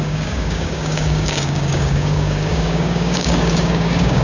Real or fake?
fake